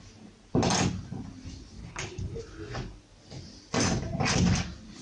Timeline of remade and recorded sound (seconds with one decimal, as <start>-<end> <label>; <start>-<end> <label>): 0.0-1.8 recorded; 1.8-2.4 remade; 2.4-5.0 recorded